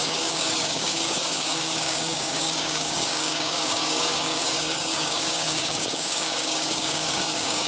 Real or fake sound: fake